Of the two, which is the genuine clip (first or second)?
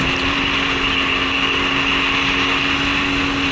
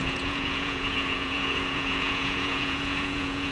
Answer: first